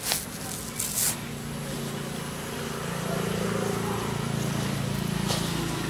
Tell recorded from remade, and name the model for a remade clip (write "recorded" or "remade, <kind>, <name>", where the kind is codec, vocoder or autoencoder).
recorded